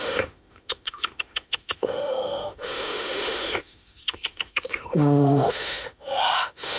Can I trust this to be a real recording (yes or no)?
no